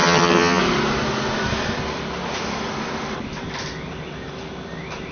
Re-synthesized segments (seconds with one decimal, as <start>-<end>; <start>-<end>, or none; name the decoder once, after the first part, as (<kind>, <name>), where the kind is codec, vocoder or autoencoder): 0.0-0.6 (vocoder, HiFi-GAN)